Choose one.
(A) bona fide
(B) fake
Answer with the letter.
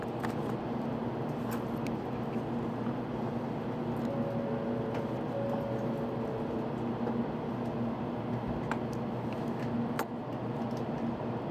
A